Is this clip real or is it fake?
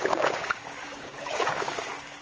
fake